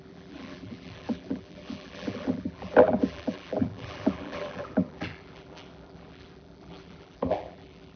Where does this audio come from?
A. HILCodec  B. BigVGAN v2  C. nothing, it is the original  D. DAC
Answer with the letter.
B